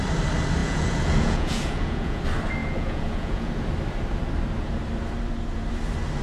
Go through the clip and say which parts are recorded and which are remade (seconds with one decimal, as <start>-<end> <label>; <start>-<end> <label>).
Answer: 0.0-0.6 recorded; 0.6-2.2 remade; 2.2-2.6 recorded; 2.6-3.5 remade; 3.5-6.2 recorded